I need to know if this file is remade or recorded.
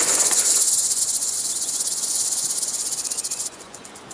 remade